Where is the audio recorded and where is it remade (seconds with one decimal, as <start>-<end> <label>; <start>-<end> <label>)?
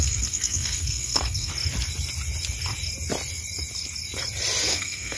0.0-1.5 remade; 1.5-4.6 recorded; 4.6-5.2 remade